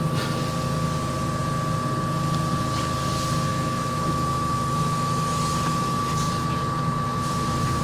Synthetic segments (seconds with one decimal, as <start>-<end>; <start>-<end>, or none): 3.5-6.0; 6.8-7.8